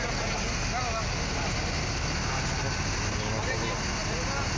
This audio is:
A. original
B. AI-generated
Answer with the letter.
A